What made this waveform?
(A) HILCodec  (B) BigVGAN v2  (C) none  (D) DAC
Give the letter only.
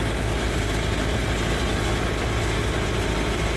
C